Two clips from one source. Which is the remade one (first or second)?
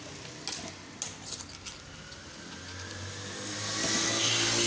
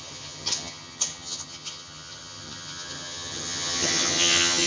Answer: second